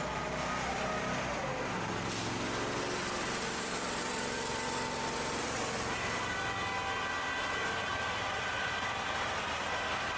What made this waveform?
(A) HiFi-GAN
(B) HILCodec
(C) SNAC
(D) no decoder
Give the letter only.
D